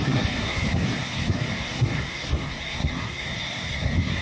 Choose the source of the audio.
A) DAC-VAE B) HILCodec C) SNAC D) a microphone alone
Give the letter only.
C